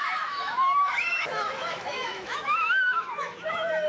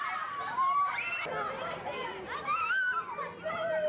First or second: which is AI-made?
first